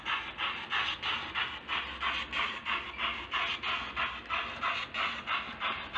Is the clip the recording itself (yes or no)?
yes